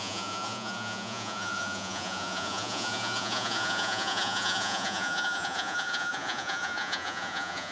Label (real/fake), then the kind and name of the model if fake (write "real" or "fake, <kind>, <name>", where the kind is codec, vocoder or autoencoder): fake, vocoder, Vocos